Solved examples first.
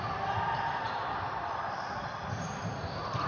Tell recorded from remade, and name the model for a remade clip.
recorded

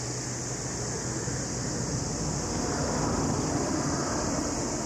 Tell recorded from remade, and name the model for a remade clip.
recorded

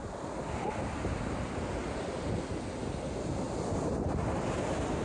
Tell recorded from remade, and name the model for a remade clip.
recorded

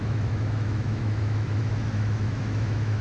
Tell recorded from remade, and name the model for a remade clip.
remade, autoencoder, DAC-VAE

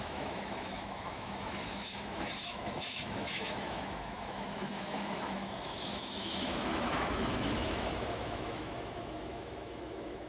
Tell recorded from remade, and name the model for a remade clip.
remade, autoencoder, DAC-VAE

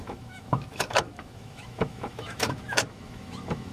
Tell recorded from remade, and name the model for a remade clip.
remade, autoencoder, DAC-VAE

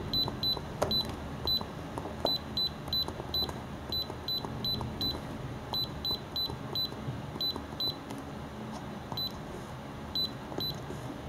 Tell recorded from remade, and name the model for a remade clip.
recorded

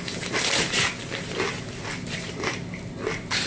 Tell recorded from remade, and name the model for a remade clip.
recorded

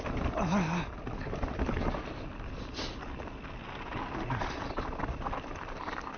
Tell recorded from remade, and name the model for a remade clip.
recorded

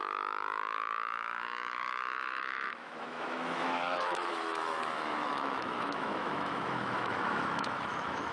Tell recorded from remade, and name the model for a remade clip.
remade, autoencoder, DAC-VAE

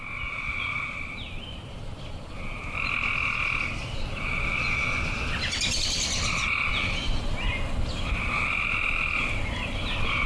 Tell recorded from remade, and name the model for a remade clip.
recorded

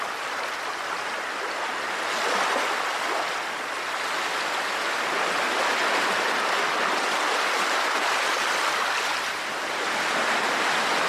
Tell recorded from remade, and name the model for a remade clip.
recorded